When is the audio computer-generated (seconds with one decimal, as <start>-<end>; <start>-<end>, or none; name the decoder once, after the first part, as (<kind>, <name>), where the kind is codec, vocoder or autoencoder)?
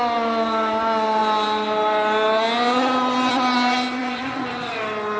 4.0-4.8 (vocoder, Vocos)